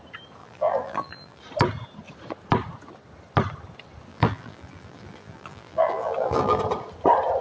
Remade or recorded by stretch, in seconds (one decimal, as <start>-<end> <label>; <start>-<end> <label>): 0.0-0.4 recorded; 0.4-1.4 remade; 1.4-4.1 recorded; 4.1-6.6 remade; 6.6-7.4 recorded